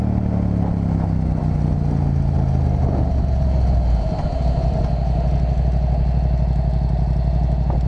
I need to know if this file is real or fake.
real